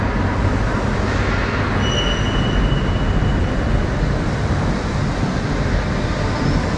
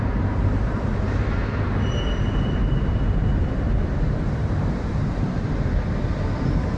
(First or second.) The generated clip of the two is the second